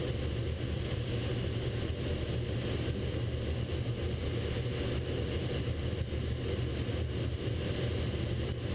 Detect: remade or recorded recorded